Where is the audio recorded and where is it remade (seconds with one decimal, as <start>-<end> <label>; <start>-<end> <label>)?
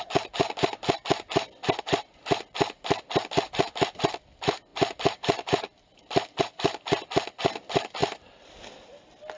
0.0-4.7 recorded; 4.7-6.4 remade; 6.4-8.0 recorded; 8.0-8.8 remade; 8.8-9.4 recorded